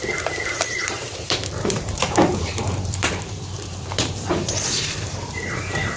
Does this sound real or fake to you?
fake